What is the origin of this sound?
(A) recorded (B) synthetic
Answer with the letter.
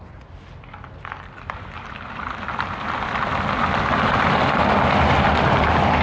A